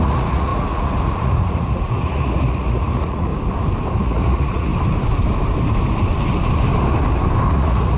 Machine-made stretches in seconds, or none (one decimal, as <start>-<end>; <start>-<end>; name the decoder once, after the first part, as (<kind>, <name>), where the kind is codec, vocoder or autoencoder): 0.0-3.3 (vocoder, Vocos); 4.0-4.7; 7.5-8.0